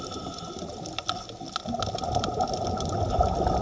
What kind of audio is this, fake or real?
real